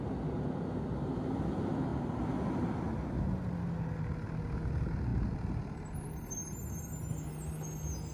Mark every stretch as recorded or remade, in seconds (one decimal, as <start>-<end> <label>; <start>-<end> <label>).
0.0-8.1 recorded